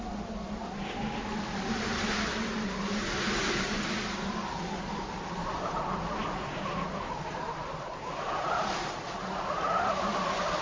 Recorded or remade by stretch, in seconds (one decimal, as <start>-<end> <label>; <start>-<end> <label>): 0.0-10.6 recorded

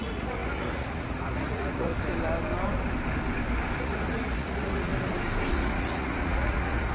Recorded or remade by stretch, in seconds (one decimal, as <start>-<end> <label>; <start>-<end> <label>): 0.0-1.9 remade; 1.9-3.8 recorded; 3.8-4.9 remade; 4.9-5.5 recorded; 5.5-6.9 remade